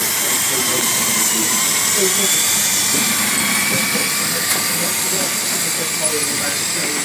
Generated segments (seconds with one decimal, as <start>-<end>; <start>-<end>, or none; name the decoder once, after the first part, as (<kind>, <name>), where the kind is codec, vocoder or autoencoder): none